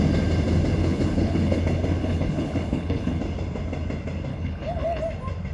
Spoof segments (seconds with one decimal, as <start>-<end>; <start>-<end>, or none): 0.8-1.6; 2.0-3.2; 4.3-5.0